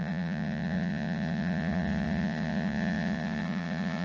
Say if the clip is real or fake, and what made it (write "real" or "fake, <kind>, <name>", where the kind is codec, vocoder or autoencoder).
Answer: fake, vocoder, Vocos